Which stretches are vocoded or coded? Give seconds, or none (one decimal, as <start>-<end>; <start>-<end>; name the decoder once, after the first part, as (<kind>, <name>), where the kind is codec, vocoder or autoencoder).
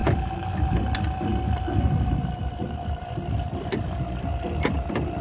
none